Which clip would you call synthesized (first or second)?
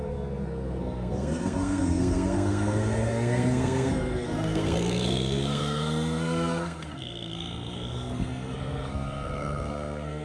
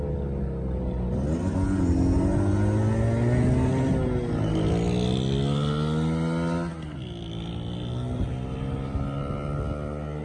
first